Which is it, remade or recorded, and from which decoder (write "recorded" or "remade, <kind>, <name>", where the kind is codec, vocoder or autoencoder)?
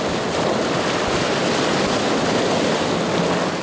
recorded